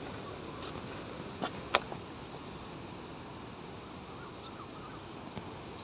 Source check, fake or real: real